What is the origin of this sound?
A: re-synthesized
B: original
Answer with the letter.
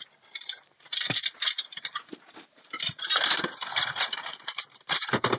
A